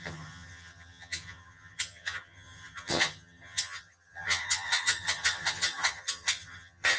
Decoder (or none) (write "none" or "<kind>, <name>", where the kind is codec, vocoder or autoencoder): vocoder, HiFi-GAN